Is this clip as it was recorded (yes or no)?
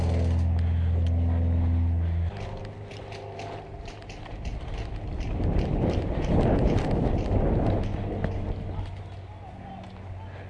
yes